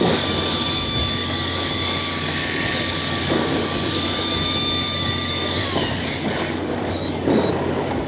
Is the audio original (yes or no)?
no